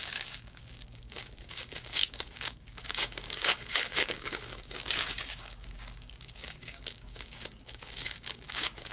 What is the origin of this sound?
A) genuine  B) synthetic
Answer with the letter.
B